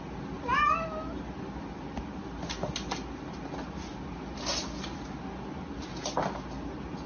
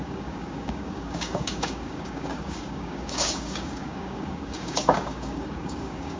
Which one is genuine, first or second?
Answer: first